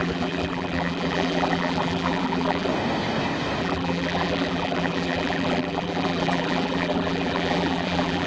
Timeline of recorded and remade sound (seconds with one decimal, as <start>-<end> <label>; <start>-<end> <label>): 0.0-2.7 remade; 2.7-3.6 recorded; 3.6-8.3 remade